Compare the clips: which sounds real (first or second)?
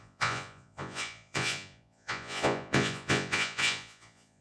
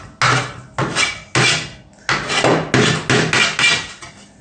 second